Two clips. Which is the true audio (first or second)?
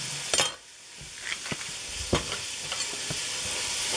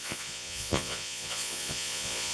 first